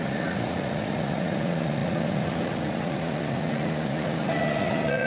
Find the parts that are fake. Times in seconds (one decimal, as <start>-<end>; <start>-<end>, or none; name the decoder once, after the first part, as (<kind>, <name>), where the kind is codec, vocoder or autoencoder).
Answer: 0.0-5.1 (vocoder, Vocos)